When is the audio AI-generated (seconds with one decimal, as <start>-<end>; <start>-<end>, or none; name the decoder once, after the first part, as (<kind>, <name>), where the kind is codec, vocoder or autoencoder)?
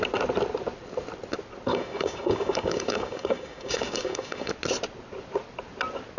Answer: 1.7-4.5 (codec, DAC)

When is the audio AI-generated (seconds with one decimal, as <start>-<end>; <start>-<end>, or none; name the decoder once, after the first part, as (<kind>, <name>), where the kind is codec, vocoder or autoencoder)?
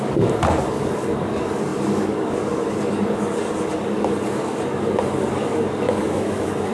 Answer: 0.0-6.7 (codec, DAC)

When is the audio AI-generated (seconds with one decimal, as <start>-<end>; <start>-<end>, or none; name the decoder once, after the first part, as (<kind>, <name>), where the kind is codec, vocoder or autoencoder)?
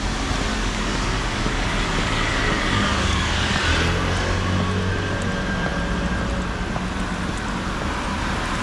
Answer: 0.5-3.6 (codec, DAC)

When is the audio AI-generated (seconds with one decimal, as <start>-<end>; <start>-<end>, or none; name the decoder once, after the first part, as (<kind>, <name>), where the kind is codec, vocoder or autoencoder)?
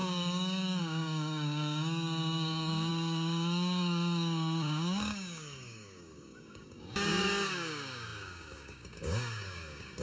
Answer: 0.0-10.0 (codec, DAC)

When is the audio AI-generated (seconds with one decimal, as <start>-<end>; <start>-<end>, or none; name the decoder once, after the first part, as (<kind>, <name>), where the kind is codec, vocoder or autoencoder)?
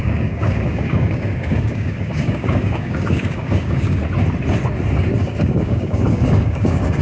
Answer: 0.0-4.0 (codec, DAC); 5.2-7.0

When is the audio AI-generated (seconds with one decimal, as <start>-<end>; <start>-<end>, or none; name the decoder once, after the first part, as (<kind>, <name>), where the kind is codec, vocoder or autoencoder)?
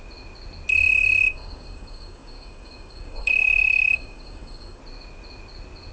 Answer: 1.3-4.8 (codec, DAC)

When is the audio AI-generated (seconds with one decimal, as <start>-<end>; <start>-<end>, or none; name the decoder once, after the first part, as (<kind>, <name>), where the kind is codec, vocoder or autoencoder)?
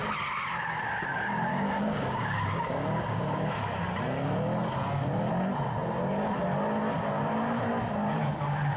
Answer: 1.5-3.5 (codec, DAC)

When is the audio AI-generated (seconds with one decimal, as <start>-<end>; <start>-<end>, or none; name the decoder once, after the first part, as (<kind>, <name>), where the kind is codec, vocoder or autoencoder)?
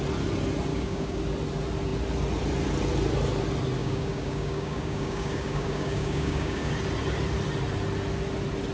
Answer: 0.7-1.2 (codec, DAC); 3.8-6.7